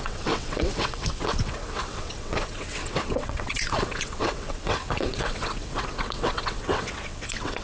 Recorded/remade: remade